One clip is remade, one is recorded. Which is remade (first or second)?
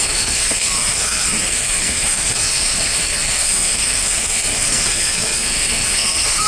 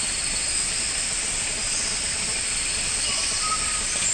first